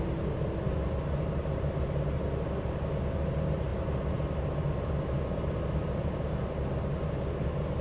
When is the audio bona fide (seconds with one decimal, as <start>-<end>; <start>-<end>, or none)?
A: 0.0-7.8